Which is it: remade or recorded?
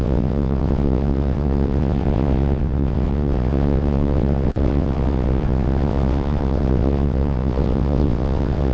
remade